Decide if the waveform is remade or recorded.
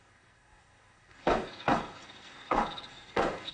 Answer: remade